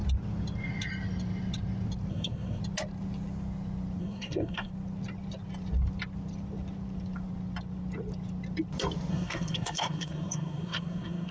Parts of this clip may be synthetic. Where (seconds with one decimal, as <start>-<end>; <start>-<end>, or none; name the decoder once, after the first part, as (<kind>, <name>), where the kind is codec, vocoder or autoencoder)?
2.1-2.6 (codec, SNAC); 4.0-4.7; 9.1-11.3